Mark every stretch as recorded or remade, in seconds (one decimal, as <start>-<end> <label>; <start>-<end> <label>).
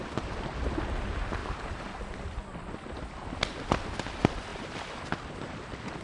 0.0-1.4 recorded; 1.4-2.0 remade; 2.0-6.0 recorded